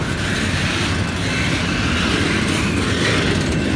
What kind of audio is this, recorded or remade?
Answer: recorded